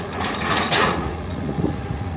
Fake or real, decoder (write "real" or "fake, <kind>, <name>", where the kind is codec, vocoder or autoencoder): fake, vocoder, Vocos